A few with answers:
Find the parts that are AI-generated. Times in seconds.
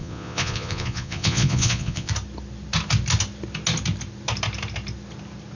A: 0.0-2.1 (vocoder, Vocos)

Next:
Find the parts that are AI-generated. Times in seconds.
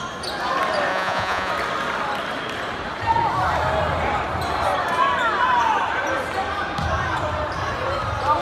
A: 0.9-1.5 (vocoder, Vocos)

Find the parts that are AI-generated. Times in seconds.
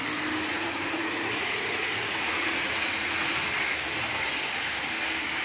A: 0.5-3.3 (vocoder, Vocos)